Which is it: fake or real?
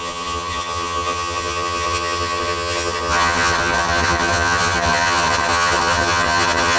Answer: fake